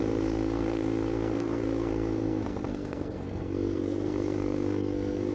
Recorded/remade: remade